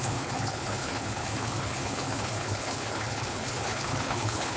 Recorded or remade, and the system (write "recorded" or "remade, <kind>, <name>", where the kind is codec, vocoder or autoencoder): remade, codec, HILCodec